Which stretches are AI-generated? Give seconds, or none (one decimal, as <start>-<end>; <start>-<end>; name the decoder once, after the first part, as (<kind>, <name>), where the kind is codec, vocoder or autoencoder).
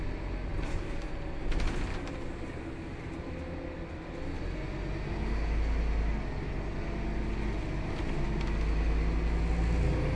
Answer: none